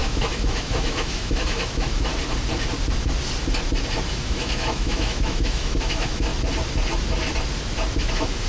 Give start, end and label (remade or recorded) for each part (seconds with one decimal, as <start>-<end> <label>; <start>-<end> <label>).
0.0-2.1 remade; 2.1-4.1 recorded; 4.1-6.3 remade; 6.3-8.0 recorded; 8.0-8.5 remade